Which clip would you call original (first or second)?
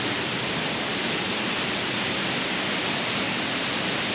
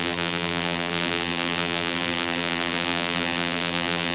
first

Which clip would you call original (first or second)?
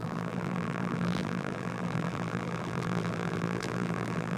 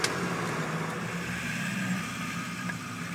second